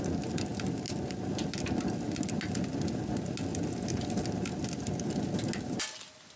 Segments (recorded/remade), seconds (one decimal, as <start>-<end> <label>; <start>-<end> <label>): 0.0-6.4 recorded